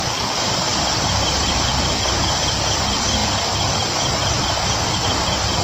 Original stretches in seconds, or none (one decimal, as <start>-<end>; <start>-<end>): 0.0-5.6